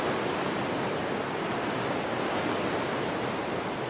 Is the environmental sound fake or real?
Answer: real